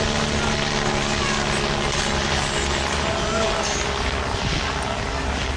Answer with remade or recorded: recorded